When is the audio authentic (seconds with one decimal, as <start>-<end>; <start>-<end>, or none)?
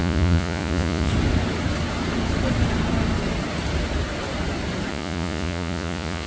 1.1-4.9